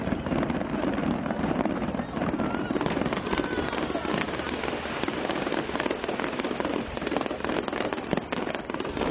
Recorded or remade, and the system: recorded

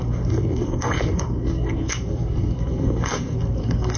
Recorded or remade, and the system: remade, codec, SNAC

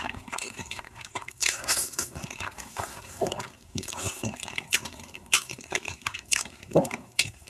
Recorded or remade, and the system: remade, codec, SNAC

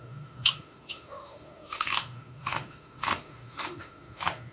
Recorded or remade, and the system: remade, autoencoder, DAC-VAE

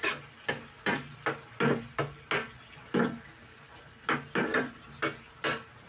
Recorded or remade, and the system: recorded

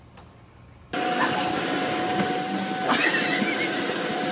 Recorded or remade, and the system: recorded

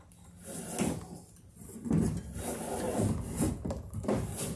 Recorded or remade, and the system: recorded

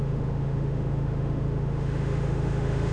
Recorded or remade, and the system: remade, autoencoder, DAC-VAE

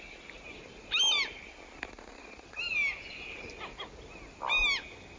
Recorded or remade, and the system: recorded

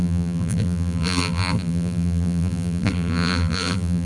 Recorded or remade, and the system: remade, vocoder, BigVGAN v2